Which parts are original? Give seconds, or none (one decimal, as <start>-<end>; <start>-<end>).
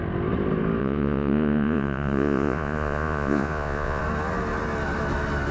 0.0-0.8; 4.0-5.5